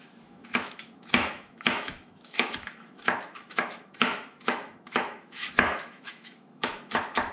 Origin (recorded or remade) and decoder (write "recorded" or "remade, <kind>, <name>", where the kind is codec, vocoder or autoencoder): remade, autoencoder, DAC-VAE